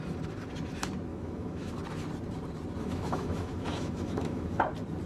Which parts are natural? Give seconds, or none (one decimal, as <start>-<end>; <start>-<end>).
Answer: 0.0-1.1; 1.7-2.8; 4.6-5.1